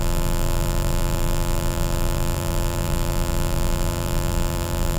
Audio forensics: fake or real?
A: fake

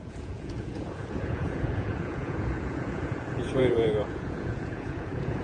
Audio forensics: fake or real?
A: fake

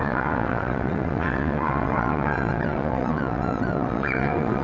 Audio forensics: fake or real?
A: fake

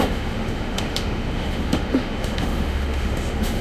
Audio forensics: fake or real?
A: fake